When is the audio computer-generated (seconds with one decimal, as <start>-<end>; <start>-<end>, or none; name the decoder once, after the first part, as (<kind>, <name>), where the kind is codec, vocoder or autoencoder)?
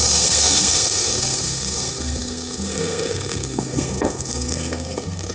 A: 0.0-5.3 (codec, SNAC)